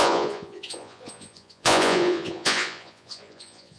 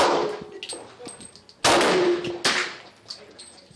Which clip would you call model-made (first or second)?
first